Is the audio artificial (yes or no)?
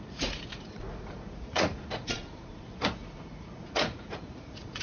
yes